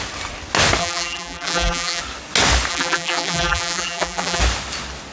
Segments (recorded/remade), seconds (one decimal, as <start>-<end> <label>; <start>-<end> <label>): 0.0-0.8 recorded; 0.8-2.0 remade; 2.0-2.7 recorded; 2.7-4.4 remade; 4.4-5.1 recorded